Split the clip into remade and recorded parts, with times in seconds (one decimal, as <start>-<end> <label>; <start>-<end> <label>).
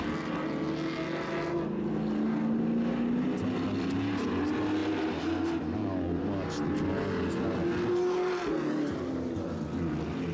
0.0-10.3 recorded